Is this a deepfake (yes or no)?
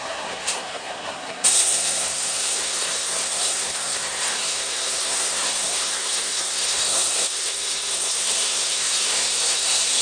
yes